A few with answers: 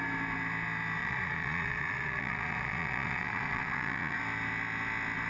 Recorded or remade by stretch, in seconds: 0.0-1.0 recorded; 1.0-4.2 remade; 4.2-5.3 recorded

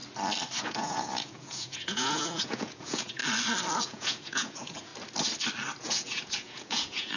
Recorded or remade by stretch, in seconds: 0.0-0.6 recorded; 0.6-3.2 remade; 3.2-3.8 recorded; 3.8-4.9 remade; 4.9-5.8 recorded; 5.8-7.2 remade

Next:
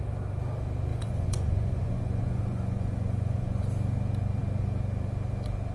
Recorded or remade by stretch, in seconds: 0.0-0.9 recorded; 0.9-3.6 remade; 3.6-5.7 recorded

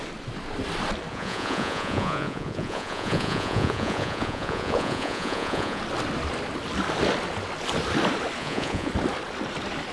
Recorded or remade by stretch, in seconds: 0.0-1.1 recorded; 1.1-5.8 remade; 5.8-8.4 recorded; 8.4-8.9 remade; 8.9-9.9 recorded

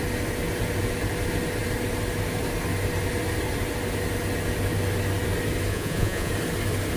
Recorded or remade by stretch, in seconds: 0.0-5.7 recorded; 5.7-6.3 remade; 6.3-7.0 recorded